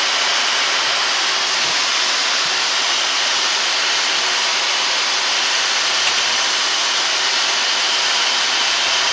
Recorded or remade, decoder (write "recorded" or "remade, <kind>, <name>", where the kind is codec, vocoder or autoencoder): recorded